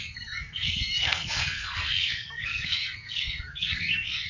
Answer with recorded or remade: remade